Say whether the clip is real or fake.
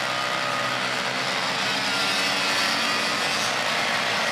real